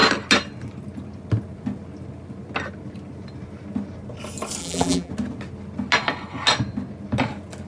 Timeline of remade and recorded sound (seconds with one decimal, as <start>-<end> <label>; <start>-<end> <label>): 0.0-4.6 recorded; 4.6-5.1 remade; 5.1-7.7 recorded